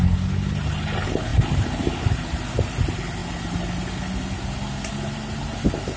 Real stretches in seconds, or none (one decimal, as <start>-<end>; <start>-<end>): 0.0-6.0